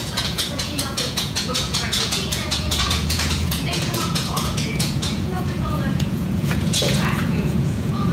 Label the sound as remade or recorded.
remade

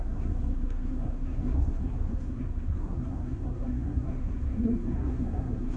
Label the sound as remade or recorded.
remade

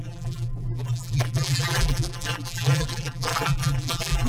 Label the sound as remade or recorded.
remade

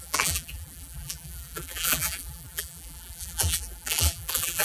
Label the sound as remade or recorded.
remade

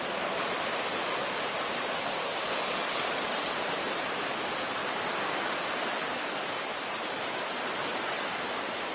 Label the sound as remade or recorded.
remade